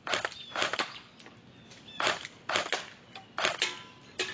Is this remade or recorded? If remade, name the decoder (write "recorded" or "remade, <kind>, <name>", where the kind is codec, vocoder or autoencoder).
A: recorded